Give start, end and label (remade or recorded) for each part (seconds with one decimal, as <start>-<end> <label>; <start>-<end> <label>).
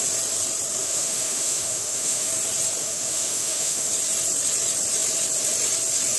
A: 0.0-0.8 recorded; 0.8-2.3 remade; 2.3-2.8 recorded; 2.8-3.9 remade; 3.9-6.2 recorded